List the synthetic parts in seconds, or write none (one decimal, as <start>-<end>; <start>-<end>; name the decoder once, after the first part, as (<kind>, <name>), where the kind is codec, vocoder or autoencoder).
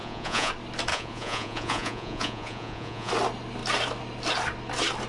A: 0.0-0.5 (vocoder, Vocos); 0.9-3.1